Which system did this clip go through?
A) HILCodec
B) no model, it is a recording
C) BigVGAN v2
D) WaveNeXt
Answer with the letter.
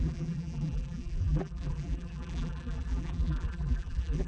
C